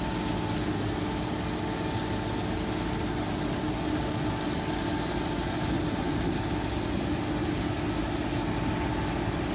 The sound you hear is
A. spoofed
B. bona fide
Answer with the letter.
B